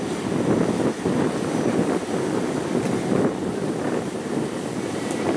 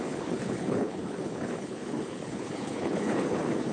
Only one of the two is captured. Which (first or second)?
first